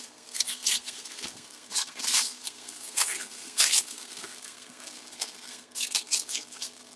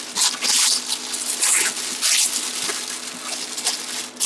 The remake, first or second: first